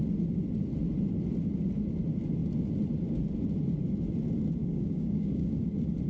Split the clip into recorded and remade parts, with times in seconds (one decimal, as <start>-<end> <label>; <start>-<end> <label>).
0.0-4.6 recorded; 4.6-5.6 remade; 5.6-6.1 recorded